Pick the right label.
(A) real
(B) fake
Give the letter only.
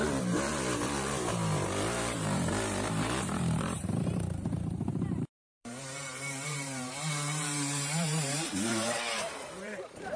B